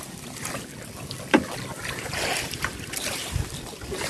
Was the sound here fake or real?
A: fake